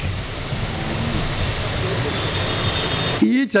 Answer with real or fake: real